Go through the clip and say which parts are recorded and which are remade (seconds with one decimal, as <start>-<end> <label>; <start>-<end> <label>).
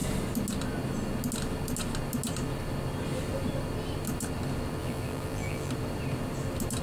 0.0-4.8 recorded; 4.8-5.7 remade; 5.7-6.8 recorded